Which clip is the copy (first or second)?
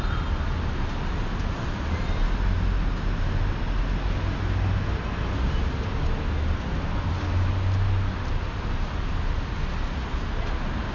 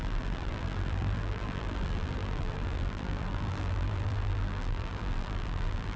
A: second